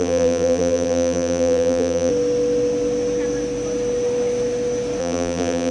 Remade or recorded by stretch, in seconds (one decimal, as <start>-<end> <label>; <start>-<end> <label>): 0.0-2.1 remade; 2.1-5.0 recorded; 5.0-5.7 remade